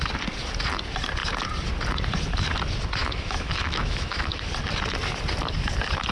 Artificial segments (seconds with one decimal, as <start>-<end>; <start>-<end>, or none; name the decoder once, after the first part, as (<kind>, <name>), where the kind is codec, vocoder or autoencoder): 3.0-4.5 (autoencoder, DAC-VAE)